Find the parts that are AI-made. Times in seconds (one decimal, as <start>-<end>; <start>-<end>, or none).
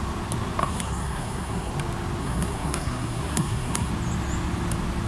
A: 0.6-1.7; 2.2-3.9